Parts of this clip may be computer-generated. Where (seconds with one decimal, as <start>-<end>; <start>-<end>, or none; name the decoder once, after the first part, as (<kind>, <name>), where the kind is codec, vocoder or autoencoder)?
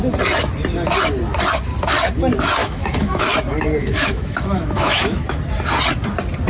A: 2.6-3.3 (autoencoder, DAC-VAE); 3.8-5.4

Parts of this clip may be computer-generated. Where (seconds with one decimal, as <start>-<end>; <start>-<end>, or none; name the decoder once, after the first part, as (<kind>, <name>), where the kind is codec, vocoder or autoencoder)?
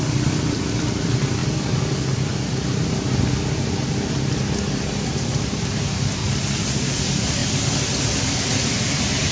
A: 0.0-1.4 (vocoder, BigVGAN v2); 4.7-5.3; 5.8-6.2; 7.0-7.4; 8.7-9.3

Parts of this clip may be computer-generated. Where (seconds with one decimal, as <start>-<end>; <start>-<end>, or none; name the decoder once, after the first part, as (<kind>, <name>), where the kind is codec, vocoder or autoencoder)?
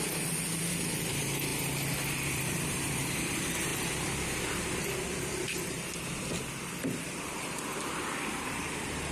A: 0.0-1.5 (vocoder, BigVGAN v2); 2.3-3.7; 4.8-9.1